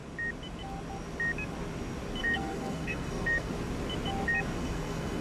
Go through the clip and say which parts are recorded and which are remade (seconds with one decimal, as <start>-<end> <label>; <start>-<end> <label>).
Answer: 0.0-2.2 recorded; 2.2-3.5 remade; 3.5-4.6 recorded; 4.6-5.2 remade